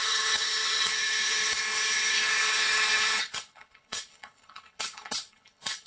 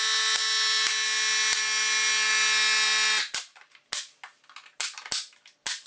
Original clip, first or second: second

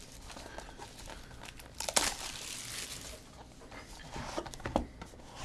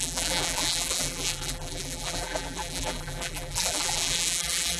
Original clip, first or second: first